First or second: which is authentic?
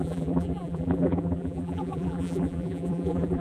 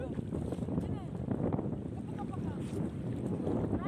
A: second